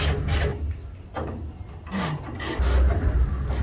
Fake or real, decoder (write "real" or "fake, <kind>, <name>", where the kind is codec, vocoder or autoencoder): real